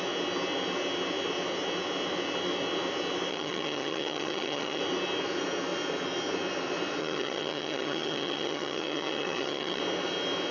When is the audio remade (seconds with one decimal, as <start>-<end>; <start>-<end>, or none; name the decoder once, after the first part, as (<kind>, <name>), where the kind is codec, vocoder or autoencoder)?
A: 3.3-4.8 (vocoder, HiFi-GAN); 7.0-9.8